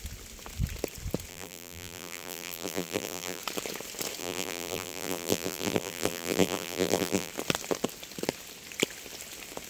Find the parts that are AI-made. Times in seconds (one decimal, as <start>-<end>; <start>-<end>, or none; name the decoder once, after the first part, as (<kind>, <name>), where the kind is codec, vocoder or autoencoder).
1.3-3.4 (vocoder, BigVGAN v2); 4.2-7.3